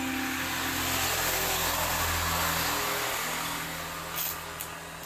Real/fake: real